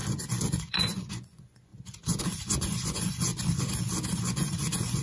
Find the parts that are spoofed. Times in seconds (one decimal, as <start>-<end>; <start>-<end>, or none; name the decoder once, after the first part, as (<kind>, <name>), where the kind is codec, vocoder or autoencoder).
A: 0.0-1.7 (vocoder, Vocos); 2.2-3.3; 4.2-5.0